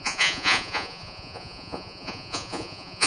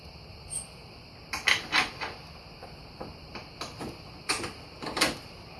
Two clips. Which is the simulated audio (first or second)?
first